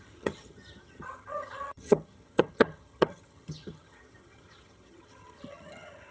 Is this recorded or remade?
remade